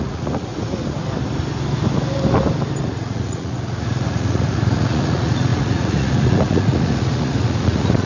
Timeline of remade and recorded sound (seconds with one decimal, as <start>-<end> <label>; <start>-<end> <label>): 0.0-0.5 remade; 0.5-2.8 recorded; 2.8-8.1 remade